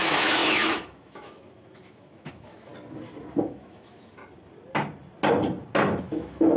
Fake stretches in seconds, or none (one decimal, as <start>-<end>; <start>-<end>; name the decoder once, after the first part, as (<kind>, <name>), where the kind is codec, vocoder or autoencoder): 0.0-2.7 (autoencoder, DAC-VAE); 3.4-4.2; 6.0-6.6